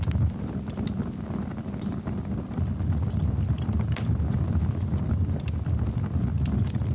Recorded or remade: recorded